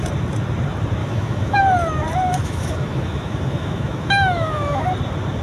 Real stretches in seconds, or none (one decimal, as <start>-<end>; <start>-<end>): 0.0-1.0; 1.6-2.4; 4.9-5.4